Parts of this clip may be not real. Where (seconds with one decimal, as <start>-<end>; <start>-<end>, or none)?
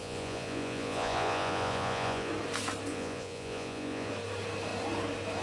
0.0-2.3; 2.9-4.1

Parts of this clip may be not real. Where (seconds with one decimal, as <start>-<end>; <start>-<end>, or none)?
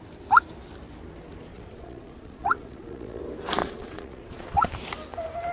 1.5-3.2; 3.6-4.7